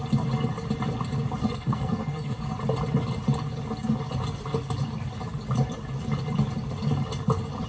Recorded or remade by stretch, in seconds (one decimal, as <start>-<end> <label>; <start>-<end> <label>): 0.0-1.4 recorded; 1.4-2.4 remade; 2.4-7.7 recorded